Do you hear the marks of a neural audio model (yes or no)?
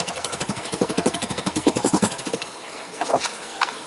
yes